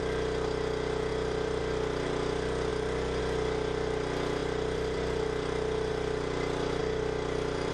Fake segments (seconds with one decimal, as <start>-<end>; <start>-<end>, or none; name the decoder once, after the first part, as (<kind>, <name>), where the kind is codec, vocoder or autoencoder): 1.1-1.6 (vocoder, BigVGAN v2); 4.4-5.9; 6.8-7.7